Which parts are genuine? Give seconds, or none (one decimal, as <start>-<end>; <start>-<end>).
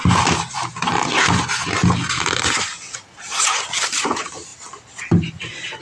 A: 0.0-4.5; 5.3-5.8